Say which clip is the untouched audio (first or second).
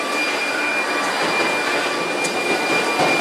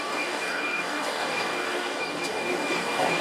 first